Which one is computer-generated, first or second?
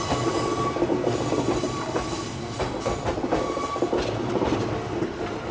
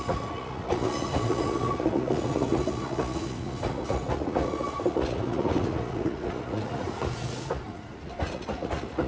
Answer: second